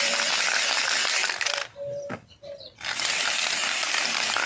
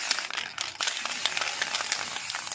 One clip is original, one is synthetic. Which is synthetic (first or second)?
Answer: first